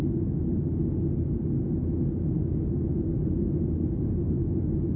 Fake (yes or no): no